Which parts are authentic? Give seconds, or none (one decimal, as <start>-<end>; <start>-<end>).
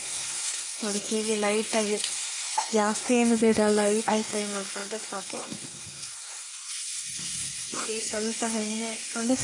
none